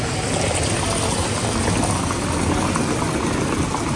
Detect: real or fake real